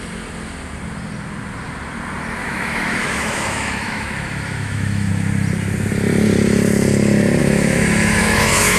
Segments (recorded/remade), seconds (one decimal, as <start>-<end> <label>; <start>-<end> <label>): 0.0-2.4 recorded; 2.4-5.1 remade; 5.1-7.4 recorded; 7.4-8.8 remade